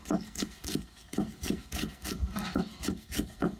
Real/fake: fake